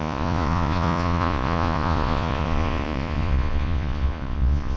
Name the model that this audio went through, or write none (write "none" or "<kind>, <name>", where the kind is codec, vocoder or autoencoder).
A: vocoder, Vocos